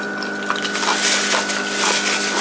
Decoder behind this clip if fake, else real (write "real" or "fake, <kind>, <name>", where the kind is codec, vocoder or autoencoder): real